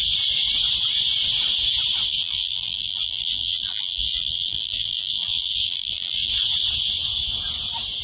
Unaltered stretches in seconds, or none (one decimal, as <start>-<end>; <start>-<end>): 0.0-2.1; 6.3-8.0